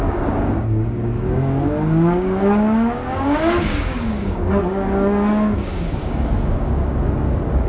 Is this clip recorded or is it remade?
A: remade